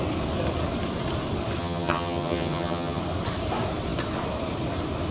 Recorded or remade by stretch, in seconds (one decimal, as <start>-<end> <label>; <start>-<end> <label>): 0.0-1.6 recorded; 1.6-3.0 remade; 3.0-5.1 recorded